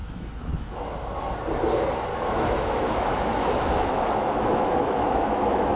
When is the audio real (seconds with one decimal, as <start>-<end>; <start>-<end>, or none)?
0.9-2.1